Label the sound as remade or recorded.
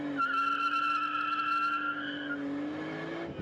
recorded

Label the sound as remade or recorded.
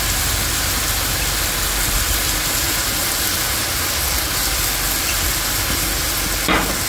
recorded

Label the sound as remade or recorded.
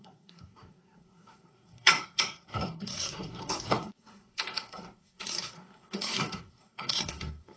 remade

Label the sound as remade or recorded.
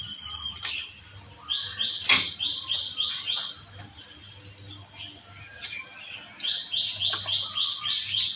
recorded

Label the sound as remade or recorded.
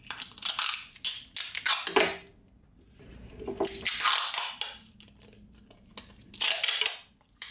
recorded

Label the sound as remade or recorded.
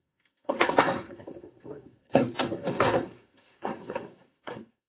remade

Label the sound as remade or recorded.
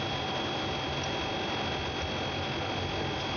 recorded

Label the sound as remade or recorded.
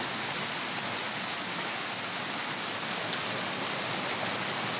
recorded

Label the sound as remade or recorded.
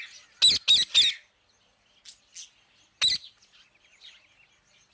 recorded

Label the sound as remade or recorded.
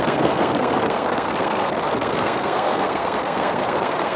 remade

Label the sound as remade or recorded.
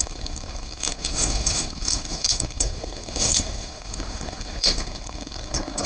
remade